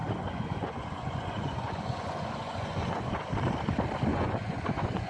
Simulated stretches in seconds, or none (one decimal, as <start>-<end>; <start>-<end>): 0.0-3.1; 4.1-5.1